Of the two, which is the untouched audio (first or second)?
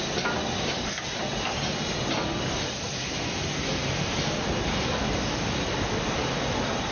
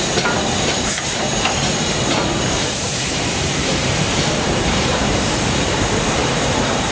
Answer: first